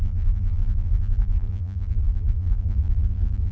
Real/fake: fake